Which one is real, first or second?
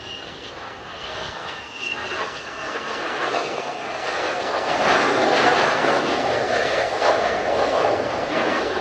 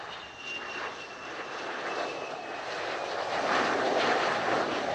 second